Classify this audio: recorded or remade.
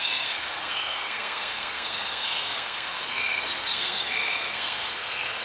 remade